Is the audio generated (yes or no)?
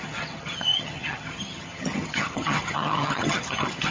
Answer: yes